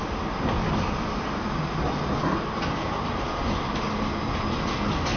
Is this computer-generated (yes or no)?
no